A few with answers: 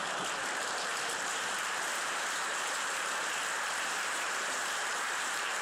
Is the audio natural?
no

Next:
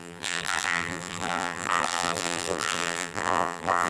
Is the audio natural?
no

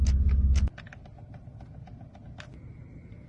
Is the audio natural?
yes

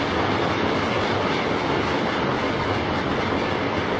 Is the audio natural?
yes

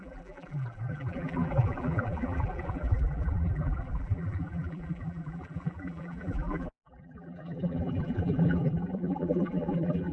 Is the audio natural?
no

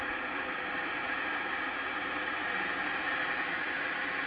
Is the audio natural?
no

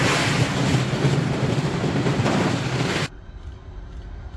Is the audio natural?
no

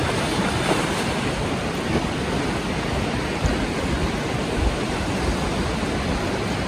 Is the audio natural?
yes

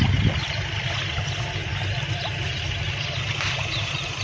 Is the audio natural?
yes